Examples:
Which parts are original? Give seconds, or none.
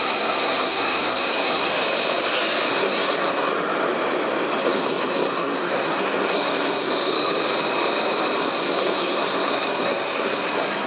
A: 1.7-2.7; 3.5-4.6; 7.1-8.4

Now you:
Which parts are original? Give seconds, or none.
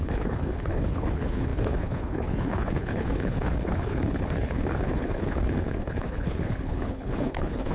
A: none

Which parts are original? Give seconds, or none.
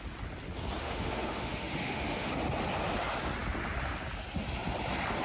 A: 0.0-0.8; 2.3-5.2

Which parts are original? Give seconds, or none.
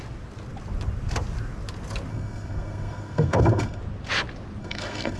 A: 0.0-2.1; 3.8-4.6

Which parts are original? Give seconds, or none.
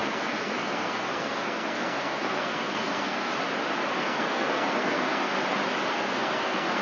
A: 3.3-3.9; 5.3-5.9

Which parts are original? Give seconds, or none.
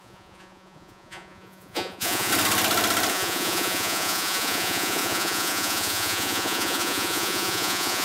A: 2.3-3.1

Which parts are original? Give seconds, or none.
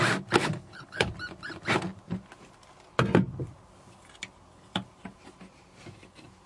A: 0.0-0.4; 1.1-6.5